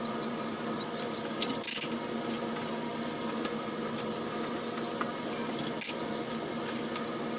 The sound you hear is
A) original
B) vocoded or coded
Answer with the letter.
A